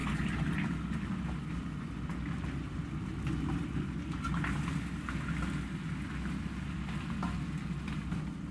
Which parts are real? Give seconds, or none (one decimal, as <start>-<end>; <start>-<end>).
0.0-8.5